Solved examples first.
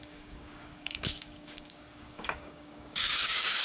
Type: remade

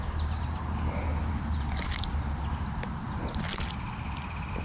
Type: recorded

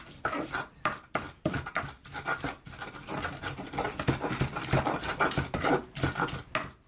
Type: recorded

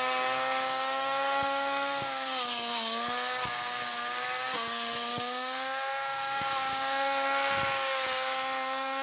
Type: remade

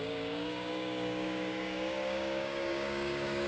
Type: remade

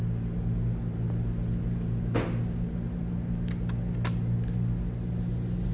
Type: recorded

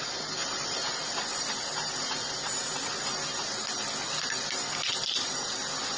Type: recorded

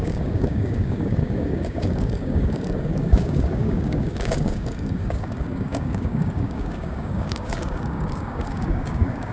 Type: remade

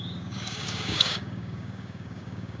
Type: remade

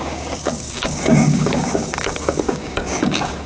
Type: remade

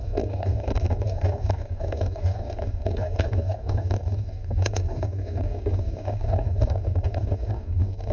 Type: remade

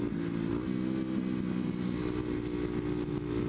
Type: recorded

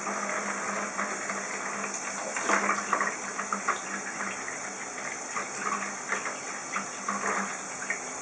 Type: recorded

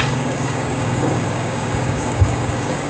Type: remade